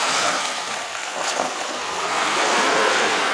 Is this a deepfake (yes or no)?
yes